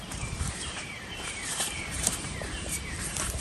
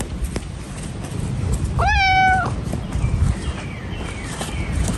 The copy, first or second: first